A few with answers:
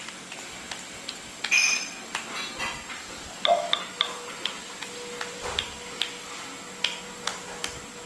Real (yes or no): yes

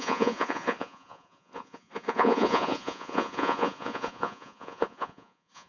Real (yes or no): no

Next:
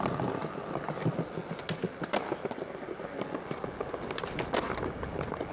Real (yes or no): yes